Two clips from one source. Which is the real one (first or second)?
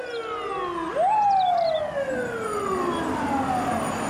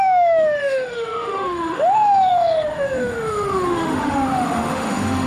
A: first